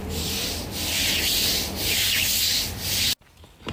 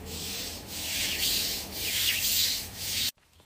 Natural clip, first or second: first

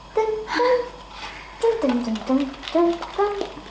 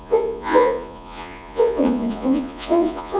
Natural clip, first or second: first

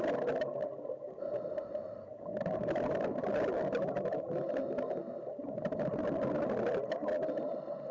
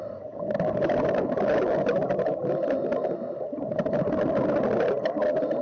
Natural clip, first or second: first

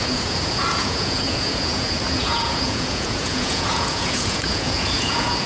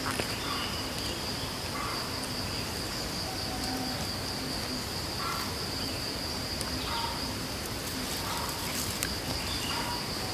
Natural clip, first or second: second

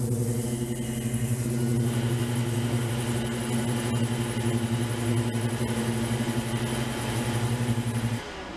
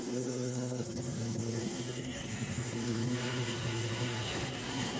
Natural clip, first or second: first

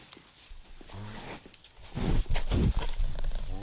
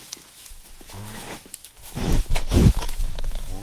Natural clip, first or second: first